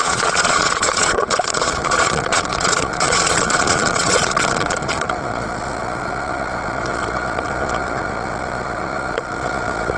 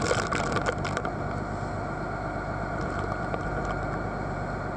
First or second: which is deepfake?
first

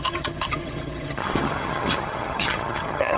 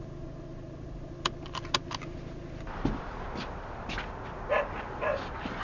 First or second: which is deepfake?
first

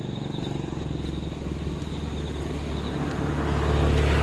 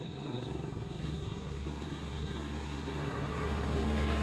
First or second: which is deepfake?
second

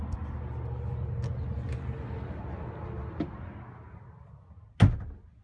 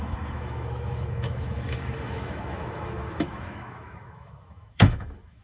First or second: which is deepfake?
second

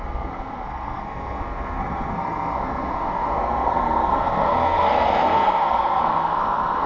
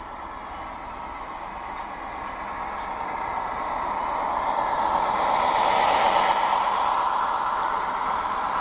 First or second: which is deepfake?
first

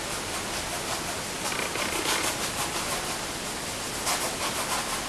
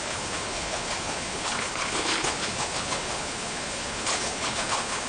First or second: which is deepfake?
second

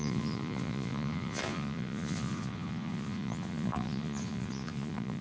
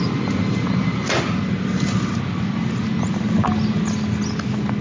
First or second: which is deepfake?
first